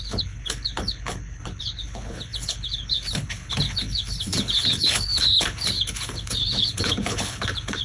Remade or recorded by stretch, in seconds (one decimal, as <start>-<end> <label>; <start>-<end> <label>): 0.0-7.8 remade